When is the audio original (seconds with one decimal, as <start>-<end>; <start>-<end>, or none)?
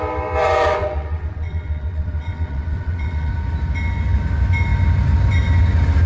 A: 0.0-0.4; 3.3-6.1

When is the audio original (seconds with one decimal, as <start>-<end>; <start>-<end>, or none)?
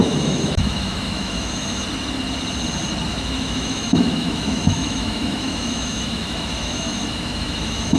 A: 1.8-3.1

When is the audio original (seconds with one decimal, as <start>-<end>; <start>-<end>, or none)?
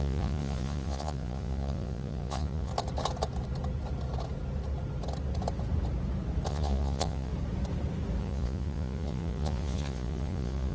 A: 2.7-6.5; 7.3-8.2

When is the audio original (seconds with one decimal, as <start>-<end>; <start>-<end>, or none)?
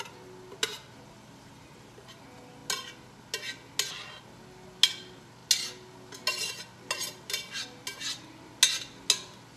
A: 0.0-0.7; 2.2-9.6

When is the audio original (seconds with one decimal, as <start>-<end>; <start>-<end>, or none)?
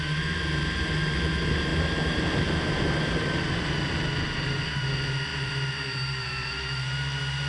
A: none